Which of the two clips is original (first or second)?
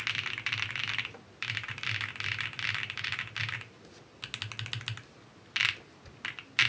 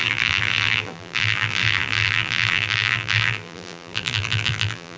first